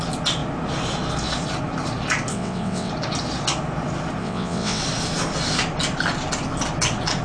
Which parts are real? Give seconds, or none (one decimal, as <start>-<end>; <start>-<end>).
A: 0.0-2.3; 2.9-4.2; 4.8-7.2